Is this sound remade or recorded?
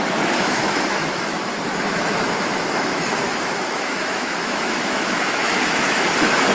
remade